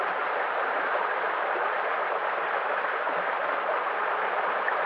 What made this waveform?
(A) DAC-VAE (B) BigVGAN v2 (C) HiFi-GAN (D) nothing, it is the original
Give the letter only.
D